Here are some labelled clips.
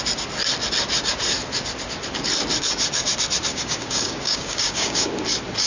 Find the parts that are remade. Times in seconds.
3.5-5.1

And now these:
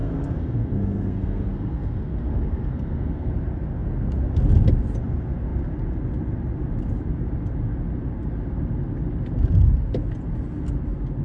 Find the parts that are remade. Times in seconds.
0.0-3.3

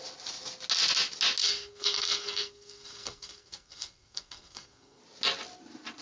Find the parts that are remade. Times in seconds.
1.4-5.0

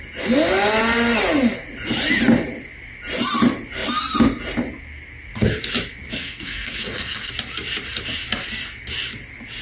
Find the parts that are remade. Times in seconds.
6.2-7.3

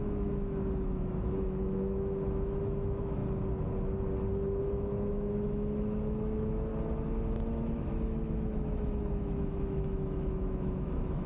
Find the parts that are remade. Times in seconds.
0.0-3.2; 4.6-6.7; 7.5-11.3

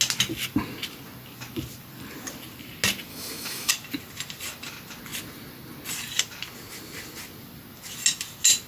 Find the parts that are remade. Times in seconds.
3.1-3.7

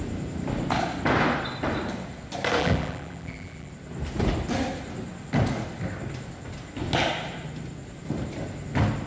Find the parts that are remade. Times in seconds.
2.6-3.7